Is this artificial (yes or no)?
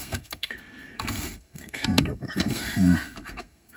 yes